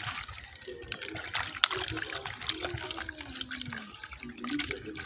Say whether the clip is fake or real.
real